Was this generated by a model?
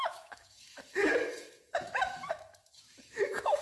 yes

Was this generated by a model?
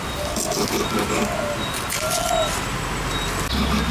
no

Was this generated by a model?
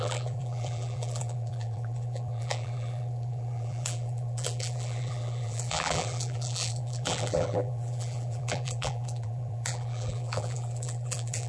yes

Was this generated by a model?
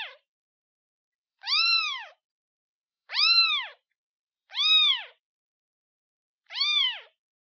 yes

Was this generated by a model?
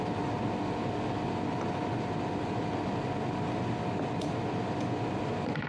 no